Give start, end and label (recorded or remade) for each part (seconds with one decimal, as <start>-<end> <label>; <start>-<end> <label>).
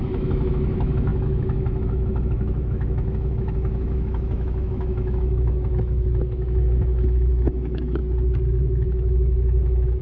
0.0-8.0 remade; 8.0-8.5 recorded; 8.5-10.0 remade